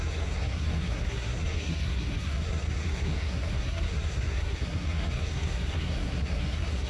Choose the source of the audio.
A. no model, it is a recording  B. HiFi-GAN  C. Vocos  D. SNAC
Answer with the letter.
D